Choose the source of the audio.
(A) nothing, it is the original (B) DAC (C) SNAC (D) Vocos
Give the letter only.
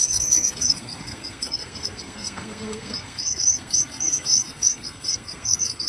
C